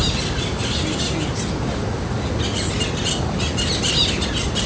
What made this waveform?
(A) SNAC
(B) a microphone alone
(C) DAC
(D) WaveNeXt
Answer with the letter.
B